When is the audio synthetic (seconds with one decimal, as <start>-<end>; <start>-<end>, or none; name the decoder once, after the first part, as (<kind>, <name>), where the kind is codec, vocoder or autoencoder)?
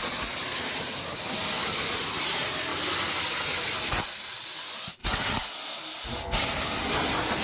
none